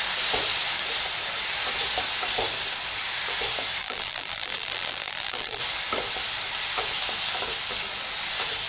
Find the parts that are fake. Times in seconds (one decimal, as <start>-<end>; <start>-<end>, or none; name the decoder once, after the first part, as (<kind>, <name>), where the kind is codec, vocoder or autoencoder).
3.8-5.6 (vocoder, BigVGAN v2)